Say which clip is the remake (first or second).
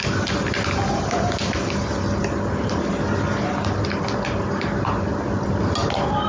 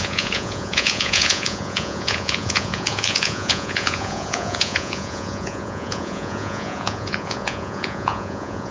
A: second